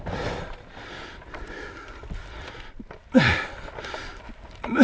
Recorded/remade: remade